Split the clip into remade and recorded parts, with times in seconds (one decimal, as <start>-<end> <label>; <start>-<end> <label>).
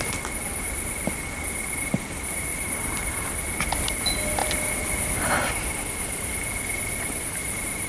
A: 0.0-2.5 recorded; 2.5-3.3 remade; 3.3-4.4 recorded; 4.4-5.3 remade; 5.3-7.9 recorded